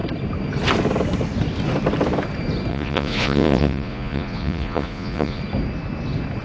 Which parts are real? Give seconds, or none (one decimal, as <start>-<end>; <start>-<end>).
0.0-2.7; 5.4-6.4